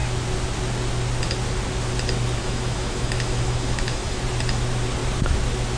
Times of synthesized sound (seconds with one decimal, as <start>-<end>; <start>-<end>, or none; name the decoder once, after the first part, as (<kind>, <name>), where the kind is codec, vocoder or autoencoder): 2.4-4.2 (autoencoder, DAC-VAE)